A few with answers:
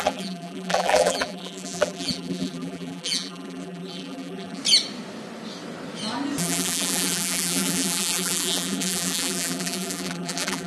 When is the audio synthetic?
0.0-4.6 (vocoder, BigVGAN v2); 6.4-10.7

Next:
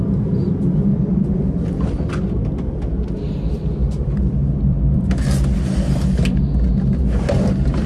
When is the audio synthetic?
0.9-2.5 (vocoder, BigVGAN v2); 3.8-5.1